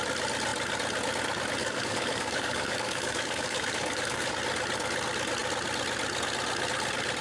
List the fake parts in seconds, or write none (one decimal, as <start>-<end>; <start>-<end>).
1.6-4.3

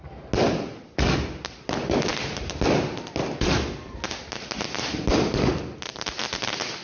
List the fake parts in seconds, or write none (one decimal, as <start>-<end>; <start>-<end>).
none

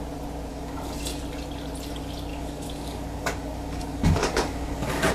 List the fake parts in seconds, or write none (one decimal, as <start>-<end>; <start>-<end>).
0.5-1.2; 2.3-5.1